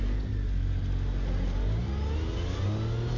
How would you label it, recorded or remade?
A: recorded